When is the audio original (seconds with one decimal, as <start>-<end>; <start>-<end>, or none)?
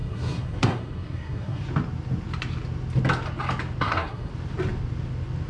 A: 1.6-3.8; 4.3-5.5